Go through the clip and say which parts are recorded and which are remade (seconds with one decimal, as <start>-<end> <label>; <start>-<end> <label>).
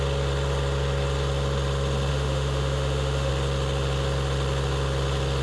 0.0-2.1 recorded; 2.1-3.3 remade; 3.3-5.4 recorded